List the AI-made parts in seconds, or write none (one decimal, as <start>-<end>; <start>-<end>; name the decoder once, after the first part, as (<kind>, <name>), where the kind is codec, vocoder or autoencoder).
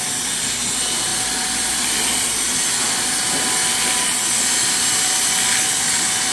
none